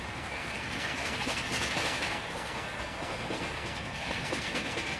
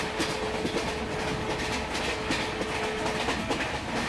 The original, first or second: second